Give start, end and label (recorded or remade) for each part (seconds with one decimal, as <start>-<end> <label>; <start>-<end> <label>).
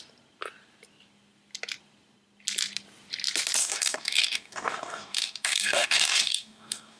0.0-3.6 recorded; 3.6-7.0 remade